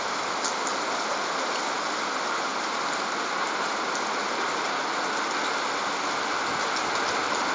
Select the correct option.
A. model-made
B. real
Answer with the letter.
B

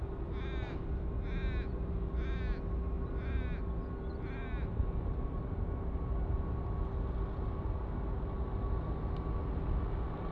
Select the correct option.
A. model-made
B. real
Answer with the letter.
B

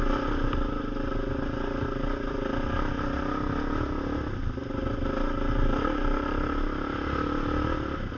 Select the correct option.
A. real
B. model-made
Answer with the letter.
A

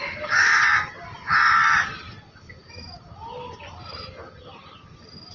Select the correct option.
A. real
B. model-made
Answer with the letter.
A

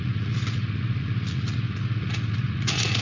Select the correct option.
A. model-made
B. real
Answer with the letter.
A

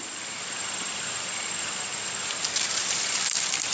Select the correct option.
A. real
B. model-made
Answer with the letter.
A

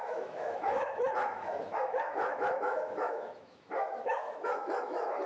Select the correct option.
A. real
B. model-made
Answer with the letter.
B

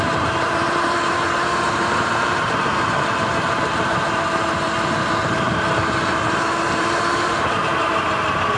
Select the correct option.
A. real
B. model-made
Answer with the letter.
B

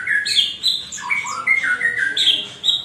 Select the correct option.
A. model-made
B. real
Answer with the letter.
B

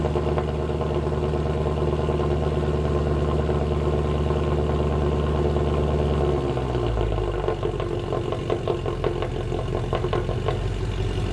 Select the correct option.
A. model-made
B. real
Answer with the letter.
B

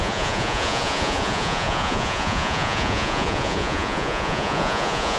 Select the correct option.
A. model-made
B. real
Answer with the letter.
A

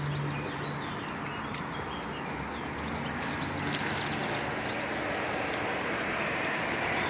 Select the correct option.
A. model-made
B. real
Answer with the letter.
B